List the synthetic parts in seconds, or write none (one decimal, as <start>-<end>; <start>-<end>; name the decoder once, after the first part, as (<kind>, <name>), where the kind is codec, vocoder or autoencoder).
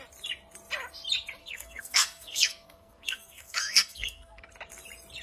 1.4-4.5 (codec, SNAC)